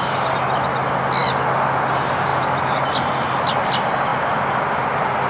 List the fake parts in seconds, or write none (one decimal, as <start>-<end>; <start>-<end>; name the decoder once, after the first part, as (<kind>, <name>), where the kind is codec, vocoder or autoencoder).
none